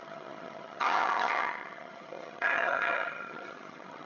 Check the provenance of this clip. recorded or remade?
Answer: remade